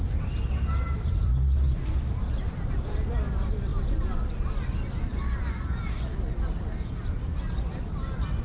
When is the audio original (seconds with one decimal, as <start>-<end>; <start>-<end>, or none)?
0.0-8.4